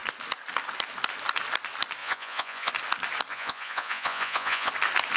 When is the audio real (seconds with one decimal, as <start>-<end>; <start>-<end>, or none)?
0.0-2.0; 2.7-3.3; 4.7-5.2